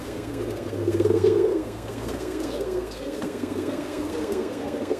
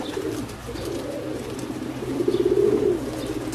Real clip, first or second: second